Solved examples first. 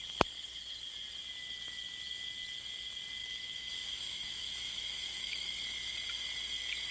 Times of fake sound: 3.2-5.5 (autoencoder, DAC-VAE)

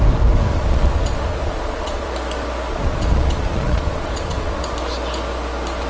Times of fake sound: 0.5-2.1 (vocoder, Vocos); 2.7-4.6

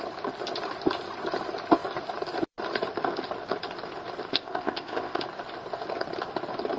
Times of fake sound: 4.3-5.2 (codec, ZipCodec)

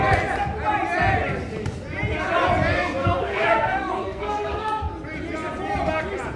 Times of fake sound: 3.0-4.9 (codec, SNAC)

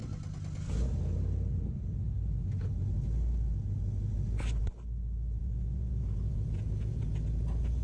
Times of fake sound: 5.4-7.0 (vocoder, Vocos)

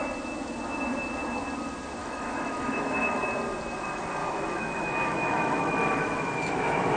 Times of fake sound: 2.0-3.2 (autoencoder, DAC-VAE); 4.2-7.0